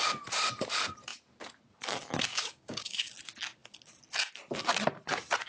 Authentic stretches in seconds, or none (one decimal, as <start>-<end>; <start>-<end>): 0.0-2.3; 3.1-5.5